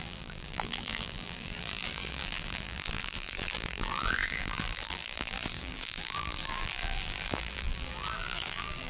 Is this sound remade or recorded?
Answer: remade